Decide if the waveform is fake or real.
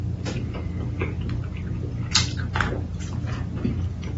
real